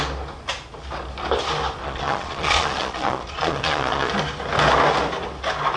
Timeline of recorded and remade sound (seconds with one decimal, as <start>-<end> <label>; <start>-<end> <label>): 0.0-1.8 recorded; 1.8-4.1 remade; 4.1-5.8 recorded